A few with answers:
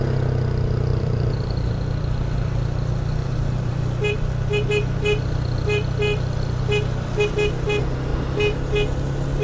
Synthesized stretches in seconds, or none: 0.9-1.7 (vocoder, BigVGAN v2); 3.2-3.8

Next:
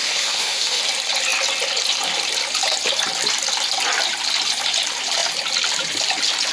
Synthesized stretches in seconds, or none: 0.0-0.8 (autoencoder, DAC-VAE)

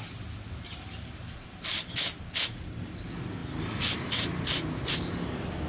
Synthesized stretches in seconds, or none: none

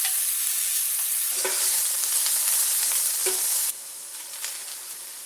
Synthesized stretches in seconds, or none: 3.2-4.2 (autoencoder, DAC-VAE)

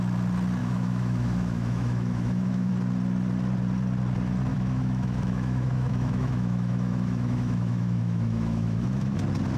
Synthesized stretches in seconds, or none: 0.6-2.7 (autoencoder, DAC-VAE); 4.5-9.2

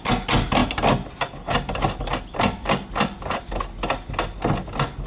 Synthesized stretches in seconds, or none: none

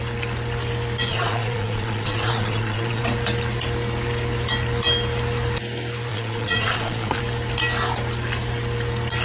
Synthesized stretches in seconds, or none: 1.1-3.0 (vocoder, Vocos); 6.1-7.2